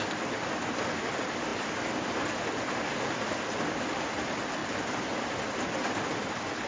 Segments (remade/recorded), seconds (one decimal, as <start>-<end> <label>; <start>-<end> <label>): 0.0-4.6 recorded; 4.6-5.2 remade; 5.2-6.7 recorded